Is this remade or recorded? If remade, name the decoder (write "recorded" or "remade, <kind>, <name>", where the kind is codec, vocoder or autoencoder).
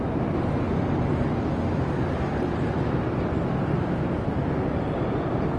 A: recorded